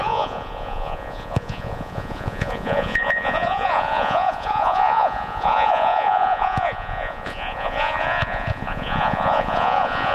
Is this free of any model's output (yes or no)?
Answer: no